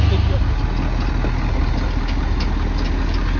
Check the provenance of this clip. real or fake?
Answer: real